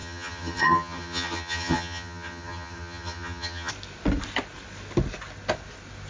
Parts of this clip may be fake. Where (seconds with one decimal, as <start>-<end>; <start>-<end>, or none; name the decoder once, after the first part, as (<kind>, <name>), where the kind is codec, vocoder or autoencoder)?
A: 0.0-3.7 (vocoder, HiFi-GAN)

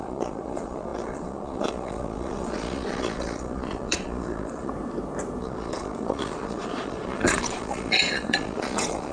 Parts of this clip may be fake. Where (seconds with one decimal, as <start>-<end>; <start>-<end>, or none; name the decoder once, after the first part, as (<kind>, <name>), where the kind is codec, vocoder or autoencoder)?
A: 0.0-4.7 (vocoder, Vocos); 5.4-9.1

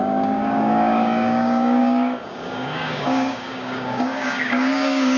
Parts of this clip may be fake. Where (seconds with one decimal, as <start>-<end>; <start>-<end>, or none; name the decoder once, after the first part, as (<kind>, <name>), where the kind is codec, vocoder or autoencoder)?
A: 0.0-5.2 (codec, DAC)

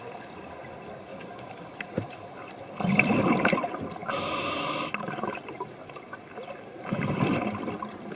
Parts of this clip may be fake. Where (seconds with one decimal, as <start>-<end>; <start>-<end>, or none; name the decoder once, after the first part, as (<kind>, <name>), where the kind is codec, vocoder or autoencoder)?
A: 1.1-1.7 (codec, DAC)

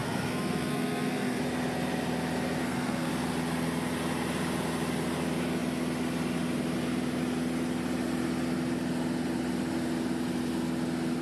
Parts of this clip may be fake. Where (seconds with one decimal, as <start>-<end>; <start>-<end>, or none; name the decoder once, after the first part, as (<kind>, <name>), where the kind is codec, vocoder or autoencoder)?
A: 0.0-1.4 (codec, SNAC); 2.6-3.1

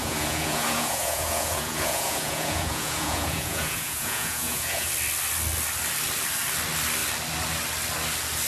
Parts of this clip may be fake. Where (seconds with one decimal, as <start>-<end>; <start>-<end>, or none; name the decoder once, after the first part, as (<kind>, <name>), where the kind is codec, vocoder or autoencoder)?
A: 0.0-4.9 (vocoder, Vocos)